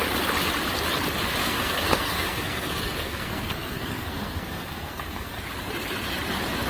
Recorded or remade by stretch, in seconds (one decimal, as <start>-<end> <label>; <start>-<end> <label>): 0.0-1.4 recorded; 1.4-5.4 remade; 5.4-6.7 recorded